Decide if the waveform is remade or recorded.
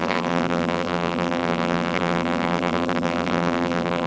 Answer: remade